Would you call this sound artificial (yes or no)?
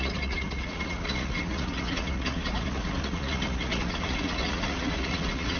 yes